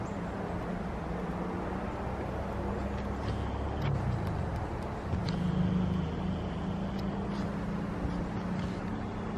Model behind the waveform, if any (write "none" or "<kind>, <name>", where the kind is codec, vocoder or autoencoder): none